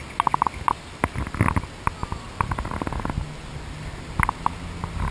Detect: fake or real real